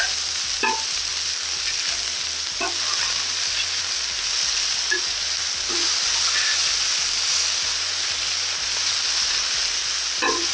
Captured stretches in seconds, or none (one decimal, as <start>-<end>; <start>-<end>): 0.0-10.5